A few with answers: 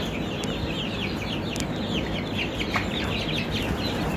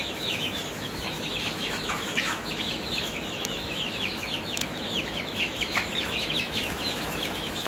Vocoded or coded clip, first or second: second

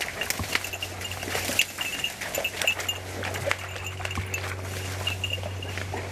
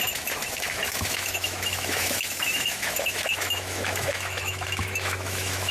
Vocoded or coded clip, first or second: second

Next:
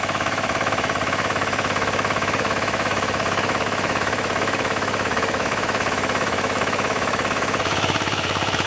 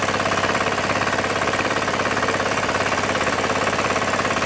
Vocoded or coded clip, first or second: first